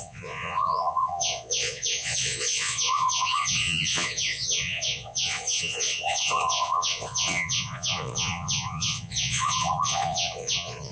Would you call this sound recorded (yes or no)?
no